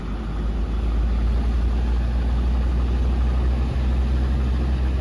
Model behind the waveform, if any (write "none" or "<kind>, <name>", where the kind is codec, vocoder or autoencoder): none